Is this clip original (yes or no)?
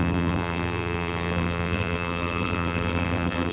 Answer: no